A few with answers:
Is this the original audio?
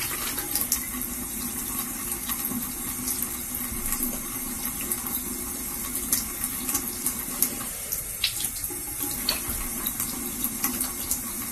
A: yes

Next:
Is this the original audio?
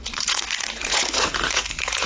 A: no